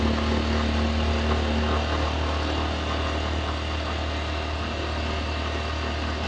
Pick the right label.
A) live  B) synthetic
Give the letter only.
A